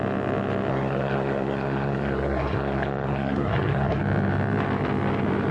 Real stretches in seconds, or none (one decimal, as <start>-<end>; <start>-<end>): 0.0-0.7; 4.0-5.5